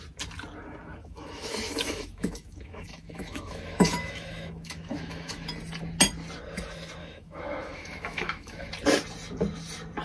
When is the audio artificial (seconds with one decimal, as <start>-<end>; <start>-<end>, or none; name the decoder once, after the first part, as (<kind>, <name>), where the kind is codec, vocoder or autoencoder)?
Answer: 1.0-5.5 (autoencoder, DAC-VAE); 7.0-8.7